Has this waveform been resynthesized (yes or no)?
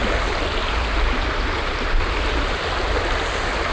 no